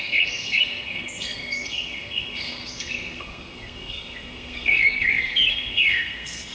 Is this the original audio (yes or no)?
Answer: no